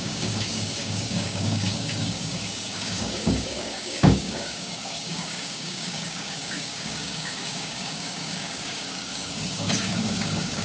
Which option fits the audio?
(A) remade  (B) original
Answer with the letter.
A